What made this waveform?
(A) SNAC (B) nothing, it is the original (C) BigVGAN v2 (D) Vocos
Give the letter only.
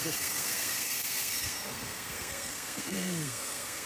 A